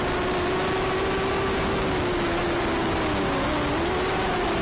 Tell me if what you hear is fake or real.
real